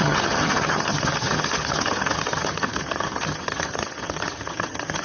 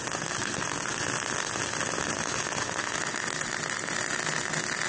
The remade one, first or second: first